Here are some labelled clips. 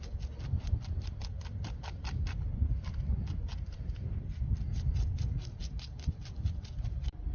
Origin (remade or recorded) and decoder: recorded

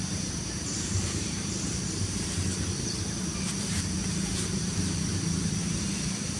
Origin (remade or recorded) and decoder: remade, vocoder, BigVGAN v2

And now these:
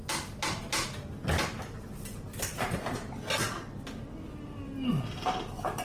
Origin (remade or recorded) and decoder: recorded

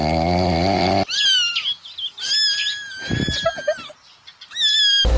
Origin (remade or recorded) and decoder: recorded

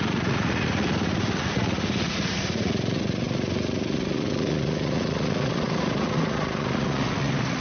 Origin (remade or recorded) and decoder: remade, vocoder, Vocos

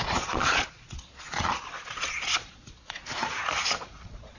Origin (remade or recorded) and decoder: remade, vocoder, Vocos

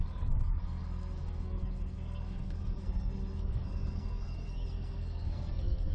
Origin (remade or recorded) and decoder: remade, codec, SNAC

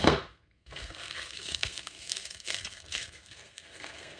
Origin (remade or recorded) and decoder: remade, codec, SNAC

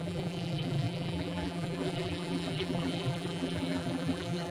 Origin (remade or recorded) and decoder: remade, vocoder, BigVGAN v2